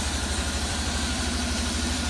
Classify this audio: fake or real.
fake